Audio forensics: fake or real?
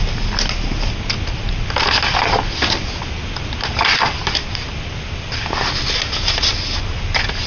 real